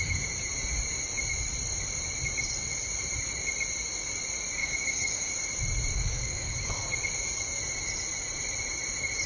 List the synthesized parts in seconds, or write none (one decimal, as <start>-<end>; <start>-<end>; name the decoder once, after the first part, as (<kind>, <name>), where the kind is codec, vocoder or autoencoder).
4.6-5.3 (codec, DAC); 5.9-6.7